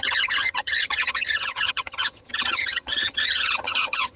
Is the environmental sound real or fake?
fake